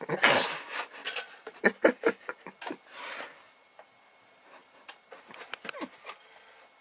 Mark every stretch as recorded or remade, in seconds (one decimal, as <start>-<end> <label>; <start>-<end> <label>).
0.0-1.0 recorded; 1.0-1.6 remade; 1.6-6.8 recorded